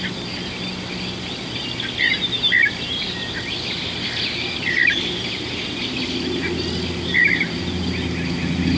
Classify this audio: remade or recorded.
recorded